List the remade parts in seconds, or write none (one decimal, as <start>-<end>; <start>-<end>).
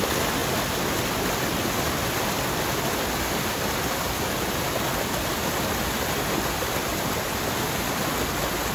none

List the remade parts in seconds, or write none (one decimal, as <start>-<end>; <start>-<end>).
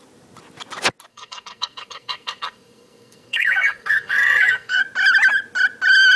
1.1-4.8